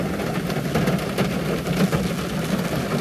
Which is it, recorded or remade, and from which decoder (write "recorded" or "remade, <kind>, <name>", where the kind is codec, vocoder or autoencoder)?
recorded